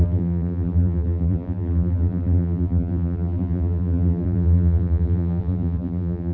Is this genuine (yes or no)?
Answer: no